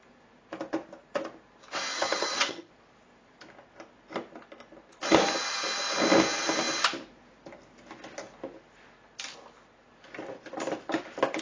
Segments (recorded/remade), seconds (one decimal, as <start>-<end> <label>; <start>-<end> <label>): 0.0-1.9 recorded; 1.9-2.7 remade; 2.7-11.4 recorded